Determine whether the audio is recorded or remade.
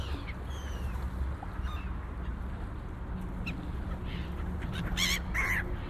recorded